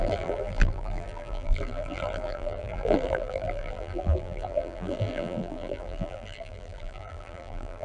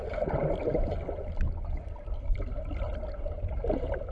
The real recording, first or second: second